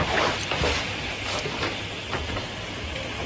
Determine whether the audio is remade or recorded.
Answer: recorded